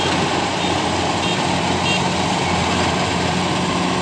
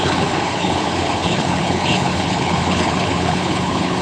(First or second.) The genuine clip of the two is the first